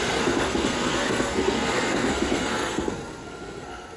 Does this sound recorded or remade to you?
remade